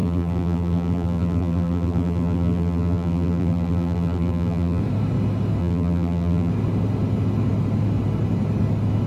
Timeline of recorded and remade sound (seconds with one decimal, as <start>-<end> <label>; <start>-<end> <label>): 0.0-4.8 remade; 4.8-5.6 recorded; 5.6-6.5 remade; 6.5-9.1 recorded